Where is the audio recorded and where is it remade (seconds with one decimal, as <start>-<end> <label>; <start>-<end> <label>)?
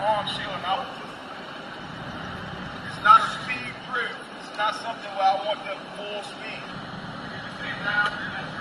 0.0-1.2 recorded; 1.2-4.4 remade; 4.4-7.3 recorded; 7.3-7.8 remade; 7.8-8.6 recorded